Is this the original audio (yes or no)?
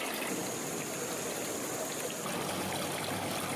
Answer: yes